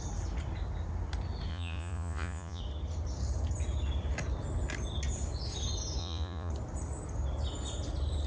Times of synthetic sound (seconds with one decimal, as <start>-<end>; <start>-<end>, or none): 1.5-2.6; 6.0-6.5